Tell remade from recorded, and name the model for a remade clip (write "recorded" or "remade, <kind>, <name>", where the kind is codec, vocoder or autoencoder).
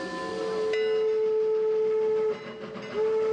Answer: recorded